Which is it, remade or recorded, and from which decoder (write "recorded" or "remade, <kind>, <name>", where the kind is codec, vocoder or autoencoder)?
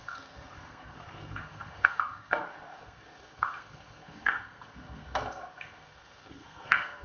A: remade, codec, SNAC